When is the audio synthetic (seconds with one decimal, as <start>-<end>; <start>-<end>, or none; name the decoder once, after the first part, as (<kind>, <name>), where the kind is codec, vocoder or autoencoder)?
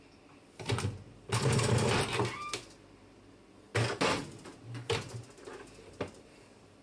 none